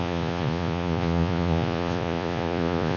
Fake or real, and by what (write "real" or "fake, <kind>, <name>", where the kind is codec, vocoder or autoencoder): fake, vocoder, Vocos